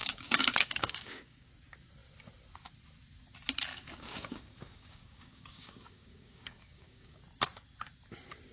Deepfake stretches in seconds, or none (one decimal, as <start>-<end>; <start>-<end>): 0.0-1.5; 3.7-7.2